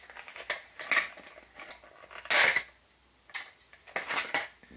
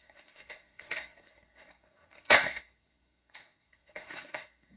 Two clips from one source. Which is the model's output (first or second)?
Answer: second